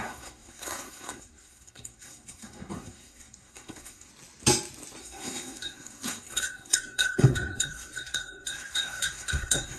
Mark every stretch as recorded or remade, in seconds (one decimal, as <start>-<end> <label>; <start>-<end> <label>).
0.0-4.1 remade; 4.1-5.0 recorded; 5.0-9.8 remade

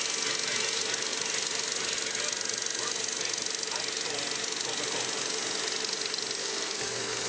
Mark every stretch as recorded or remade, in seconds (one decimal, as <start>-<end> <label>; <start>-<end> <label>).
0.0-6.4 recorded; 6.4-7.3 remade

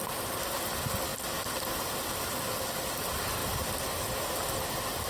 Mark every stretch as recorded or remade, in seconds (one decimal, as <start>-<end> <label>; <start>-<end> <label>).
0.0-5.1 recorded

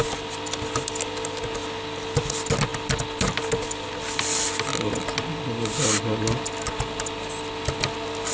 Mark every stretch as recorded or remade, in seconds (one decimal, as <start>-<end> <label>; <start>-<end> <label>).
0.0-8.3 recorded

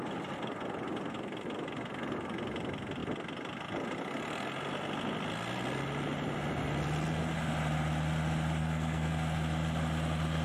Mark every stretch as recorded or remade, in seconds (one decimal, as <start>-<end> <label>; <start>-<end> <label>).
0.0-8.6 recorded; 8.6-9.1 remade; 9.1-10.4 recorded

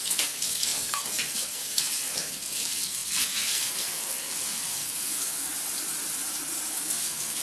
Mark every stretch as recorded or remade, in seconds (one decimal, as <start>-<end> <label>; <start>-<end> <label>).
0.0-5.5 remade; 5.5-6.7 recorded; 6.7-7.4 remade

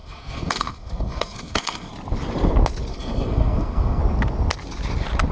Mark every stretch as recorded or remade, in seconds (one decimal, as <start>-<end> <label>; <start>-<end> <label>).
0.0-1.9 remade; 1.9-2.9 recorded; 2.9-4.0 remade; 4.0-5.3 recorded